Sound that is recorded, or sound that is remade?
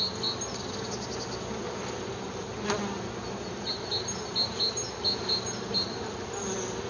recorded